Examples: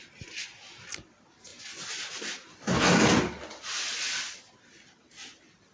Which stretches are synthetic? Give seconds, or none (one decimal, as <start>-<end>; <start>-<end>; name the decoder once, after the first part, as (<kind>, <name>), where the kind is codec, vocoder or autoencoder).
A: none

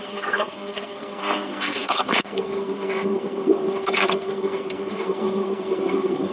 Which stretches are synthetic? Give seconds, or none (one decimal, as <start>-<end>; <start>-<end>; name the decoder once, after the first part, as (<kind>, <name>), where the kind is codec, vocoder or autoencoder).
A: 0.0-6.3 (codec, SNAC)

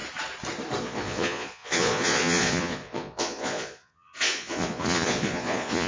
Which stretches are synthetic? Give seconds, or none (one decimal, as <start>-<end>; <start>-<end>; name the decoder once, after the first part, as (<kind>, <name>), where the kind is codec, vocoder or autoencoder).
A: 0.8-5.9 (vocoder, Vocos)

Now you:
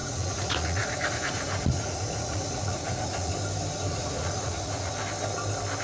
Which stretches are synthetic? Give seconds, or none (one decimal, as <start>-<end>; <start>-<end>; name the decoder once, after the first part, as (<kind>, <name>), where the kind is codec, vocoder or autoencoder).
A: 0.0-3.3 (vocoder, Vocos); 3.9-4.9

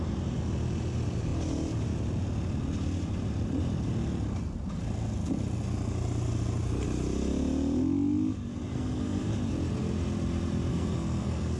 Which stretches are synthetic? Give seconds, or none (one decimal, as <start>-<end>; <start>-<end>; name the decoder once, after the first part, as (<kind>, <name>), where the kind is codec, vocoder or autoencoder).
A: 8.7-9.3 (codec, SNAC); 10.7-11.6

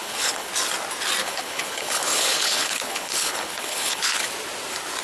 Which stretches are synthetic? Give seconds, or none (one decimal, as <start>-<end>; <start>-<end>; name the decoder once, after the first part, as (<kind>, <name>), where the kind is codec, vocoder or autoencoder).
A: 0.0-0.5 (codec, HILCodec); 1.2-4.2

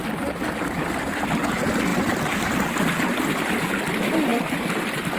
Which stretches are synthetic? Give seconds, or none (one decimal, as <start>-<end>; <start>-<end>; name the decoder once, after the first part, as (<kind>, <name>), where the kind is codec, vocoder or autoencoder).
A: none